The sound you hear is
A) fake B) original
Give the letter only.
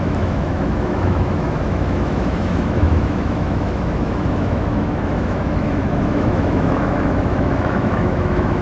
A